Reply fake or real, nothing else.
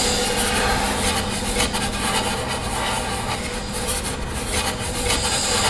real